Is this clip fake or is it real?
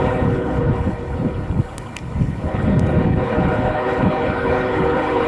fake